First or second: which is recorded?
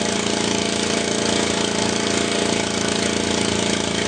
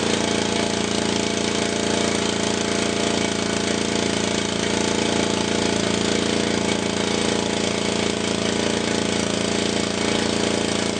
second